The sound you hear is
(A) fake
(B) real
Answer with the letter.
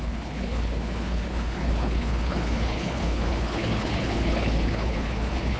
A